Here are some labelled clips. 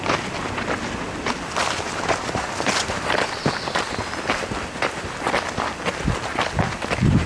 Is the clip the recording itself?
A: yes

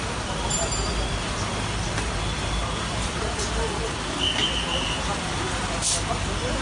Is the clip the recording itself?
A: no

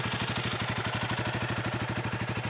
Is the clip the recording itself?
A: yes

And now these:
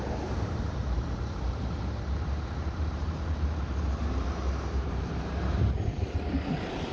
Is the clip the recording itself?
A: no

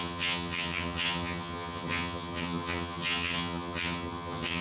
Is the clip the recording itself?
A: no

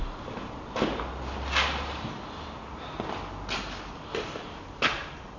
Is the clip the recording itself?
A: yes